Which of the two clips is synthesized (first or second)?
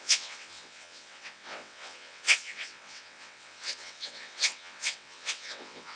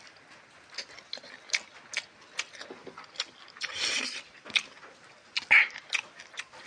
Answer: first